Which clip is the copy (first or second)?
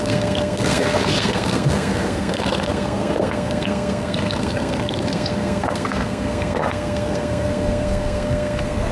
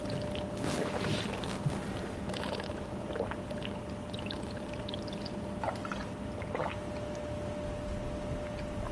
first